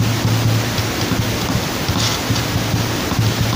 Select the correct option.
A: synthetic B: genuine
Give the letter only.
B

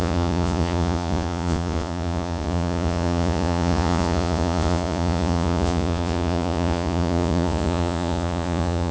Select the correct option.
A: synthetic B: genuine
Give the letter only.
A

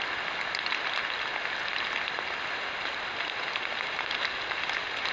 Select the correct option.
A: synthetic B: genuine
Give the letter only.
B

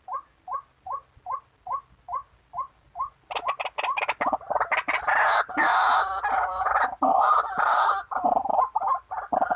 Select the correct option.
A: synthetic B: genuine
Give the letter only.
B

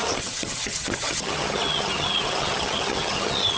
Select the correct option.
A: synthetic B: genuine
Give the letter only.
A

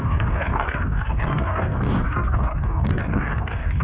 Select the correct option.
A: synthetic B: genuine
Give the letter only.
A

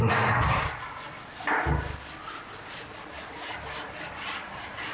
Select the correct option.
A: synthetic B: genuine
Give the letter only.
B